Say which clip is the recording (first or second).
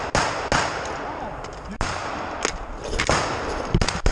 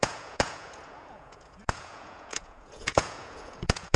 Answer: first